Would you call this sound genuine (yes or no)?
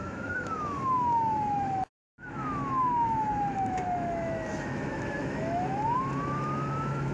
no